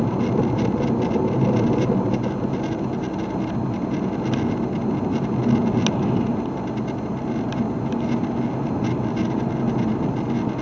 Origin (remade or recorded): recorded